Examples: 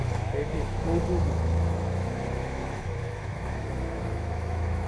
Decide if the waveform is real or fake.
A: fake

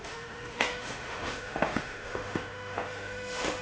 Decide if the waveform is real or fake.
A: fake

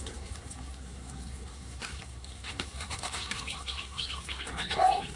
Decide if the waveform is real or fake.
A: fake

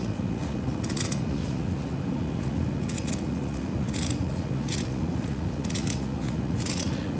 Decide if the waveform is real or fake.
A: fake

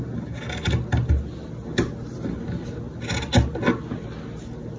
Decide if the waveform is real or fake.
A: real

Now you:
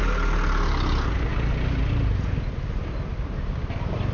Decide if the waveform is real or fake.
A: real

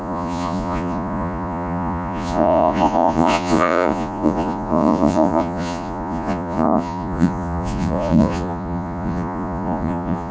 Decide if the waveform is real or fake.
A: fake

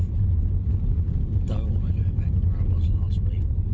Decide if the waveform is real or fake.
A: real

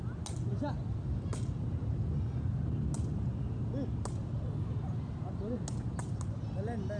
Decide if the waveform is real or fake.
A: real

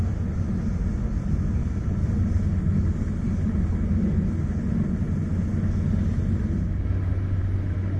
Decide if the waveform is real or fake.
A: real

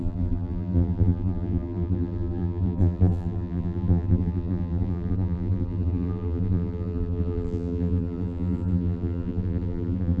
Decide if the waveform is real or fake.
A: fake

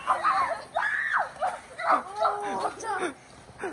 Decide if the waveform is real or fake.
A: real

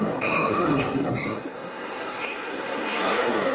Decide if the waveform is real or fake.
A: fake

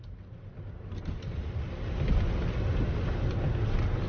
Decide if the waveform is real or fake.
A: real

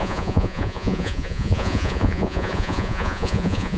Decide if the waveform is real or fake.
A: fake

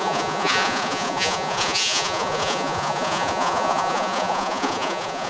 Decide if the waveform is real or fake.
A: fake